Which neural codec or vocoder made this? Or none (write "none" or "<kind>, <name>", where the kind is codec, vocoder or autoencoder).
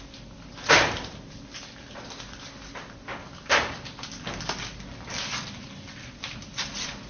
none